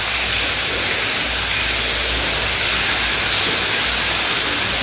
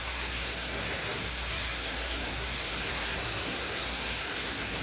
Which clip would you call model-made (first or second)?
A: second